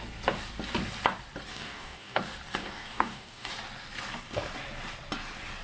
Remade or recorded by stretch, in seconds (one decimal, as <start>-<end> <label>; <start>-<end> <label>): 0.0-1.5 recorded; 1.5-2.2 remade; 2.2-2.6 recorded; 2.6-3.5 remade; 3.5-5.6 recorded